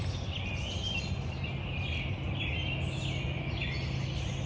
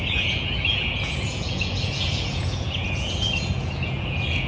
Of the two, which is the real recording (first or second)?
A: first